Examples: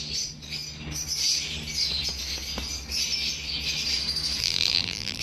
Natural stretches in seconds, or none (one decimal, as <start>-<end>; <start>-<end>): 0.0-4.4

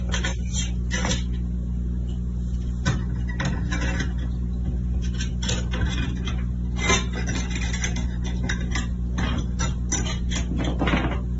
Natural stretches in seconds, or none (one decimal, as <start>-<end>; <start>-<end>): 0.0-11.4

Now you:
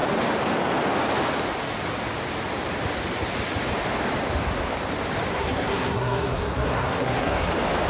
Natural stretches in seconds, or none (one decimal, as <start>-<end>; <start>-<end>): 0.0-5.3; 7.5-7.9

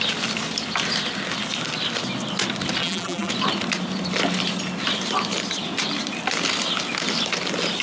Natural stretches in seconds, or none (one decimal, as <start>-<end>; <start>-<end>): 0.0-2.8; 3.3-7.8

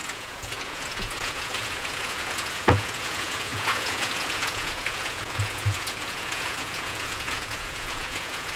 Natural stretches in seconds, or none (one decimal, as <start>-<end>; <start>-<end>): none